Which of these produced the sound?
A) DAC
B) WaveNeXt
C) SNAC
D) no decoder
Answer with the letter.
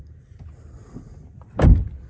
D